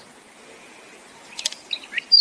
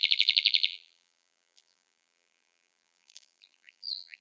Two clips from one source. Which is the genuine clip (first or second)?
first